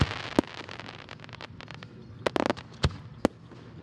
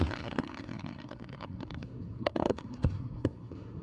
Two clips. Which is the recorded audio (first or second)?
first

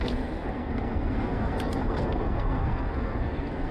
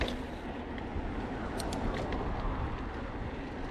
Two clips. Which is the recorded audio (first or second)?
second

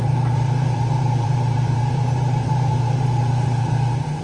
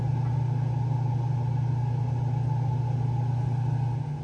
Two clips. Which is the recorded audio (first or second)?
second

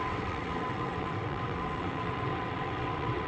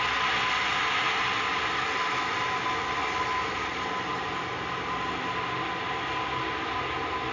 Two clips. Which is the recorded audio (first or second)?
second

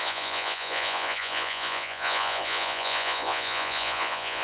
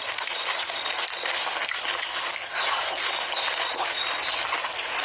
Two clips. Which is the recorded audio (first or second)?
second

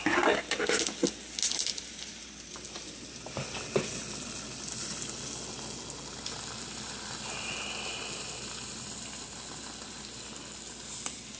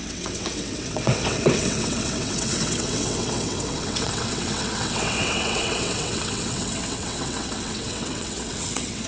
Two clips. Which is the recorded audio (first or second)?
first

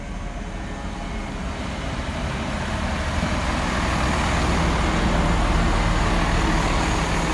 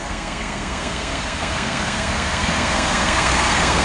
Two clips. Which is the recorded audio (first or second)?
first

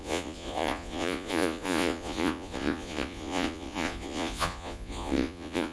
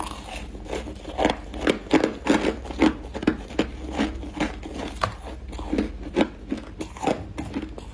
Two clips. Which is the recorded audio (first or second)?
second